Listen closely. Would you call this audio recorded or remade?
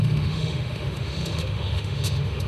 remade